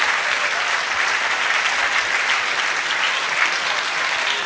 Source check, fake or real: real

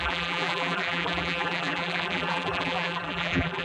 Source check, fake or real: fake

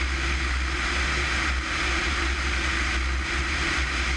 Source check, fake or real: real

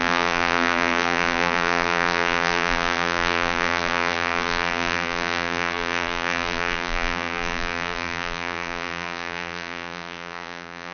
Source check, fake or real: fake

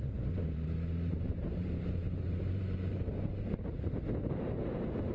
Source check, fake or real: fake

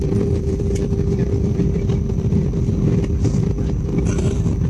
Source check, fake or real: fake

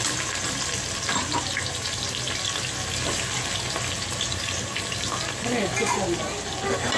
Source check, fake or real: real